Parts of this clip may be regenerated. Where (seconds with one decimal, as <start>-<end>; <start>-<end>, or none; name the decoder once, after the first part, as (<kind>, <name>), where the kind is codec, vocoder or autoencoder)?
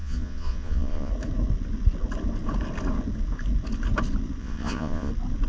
0.0-1.1 (vocoder, Vocos); 4.4-5.1